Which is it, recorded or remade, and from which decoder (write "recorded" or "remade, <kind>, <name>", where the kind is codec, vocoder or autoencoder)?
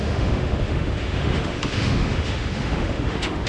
remade, autoencoder, DAC-VAE